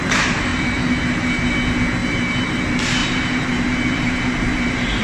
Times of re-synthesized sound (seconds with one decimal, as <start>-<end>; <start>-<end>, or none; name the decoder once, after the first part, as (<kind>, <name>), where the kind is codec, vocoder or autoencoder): 0.5-1.5 (vocoder, BigVGAN v2); 2.0-2.6; 3.0-5.0